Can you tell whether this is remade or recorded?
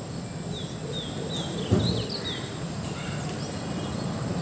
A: recorded